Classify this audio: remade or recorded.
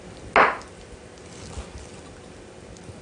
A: recorded